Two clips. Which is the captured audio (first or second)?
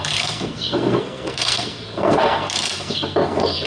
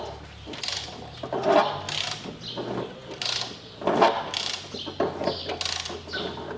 second